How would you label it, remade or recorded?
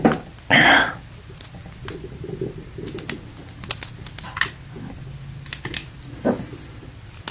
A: recorded